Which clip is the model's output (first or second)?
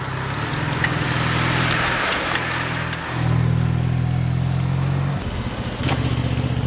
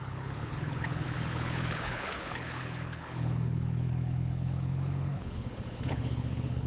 second